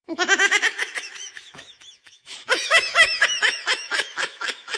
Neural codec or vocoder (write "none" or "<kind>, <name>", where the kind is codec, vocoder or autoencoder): autoencoder, DAC-VAE